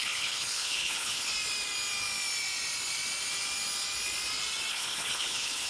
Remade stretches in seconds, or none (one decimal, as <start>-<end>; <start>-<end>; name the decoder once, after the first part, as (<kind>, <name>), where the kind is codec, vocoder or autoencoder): 0.0-1.3 (codec, HILCodec); 4.7-5.7